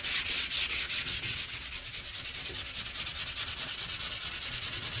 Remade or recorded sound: remade